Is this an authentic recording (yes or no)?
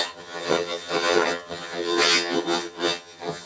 no